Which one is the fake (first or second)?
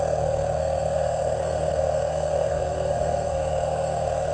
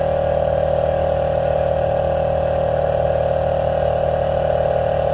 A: first